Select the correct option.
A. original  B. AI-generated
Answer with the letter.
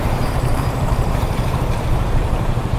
B